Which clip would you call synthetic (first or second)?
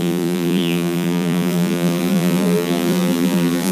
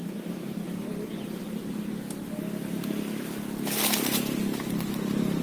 first